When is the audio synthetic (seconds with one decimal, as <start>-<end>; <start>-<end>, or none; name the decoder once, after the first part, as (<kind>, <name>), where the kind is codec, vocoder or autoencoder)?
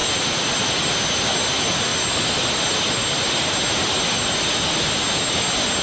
none